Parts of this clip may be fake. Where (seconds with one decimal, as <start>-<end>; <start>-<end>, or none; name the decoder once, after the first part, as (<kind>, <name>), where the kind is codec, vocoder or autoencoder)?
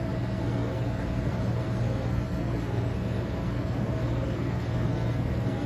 0.0-5.7 (codec, SNAC)